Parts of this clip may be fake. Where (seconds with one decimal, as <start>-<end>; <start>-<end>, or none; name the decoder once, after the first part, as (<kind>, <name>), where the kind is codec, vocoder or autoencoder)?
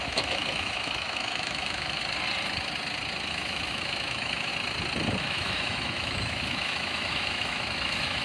0.0-2.0 (autoencoder, DAC-VAE); 3.3-4.5; 5.2-8.2